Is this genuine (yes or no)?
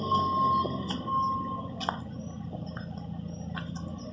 yes